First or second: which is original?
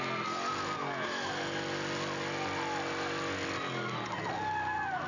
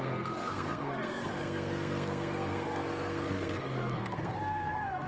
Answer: first